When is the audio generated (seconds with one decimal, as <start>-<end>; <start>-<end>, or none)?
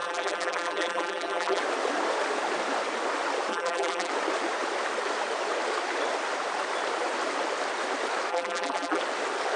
0.0-1.6; 3.5-4.1; 8.3-9.0